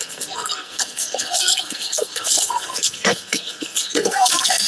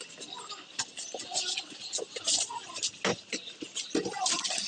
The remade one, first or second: first